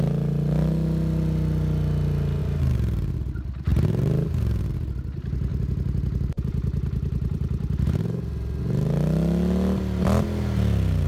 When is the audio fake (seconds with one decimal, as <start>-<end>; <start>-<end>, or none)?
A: 2.4-3.2; 3.7-4.7; 5.5-8.6